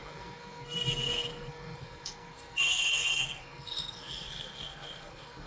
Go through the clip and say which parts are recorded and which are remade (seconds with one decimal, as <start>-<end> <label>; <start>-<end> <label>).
0.0-5.5 remade